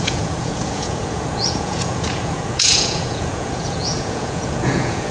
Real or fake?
fake